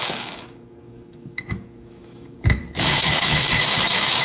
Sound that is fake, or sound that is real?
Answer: fake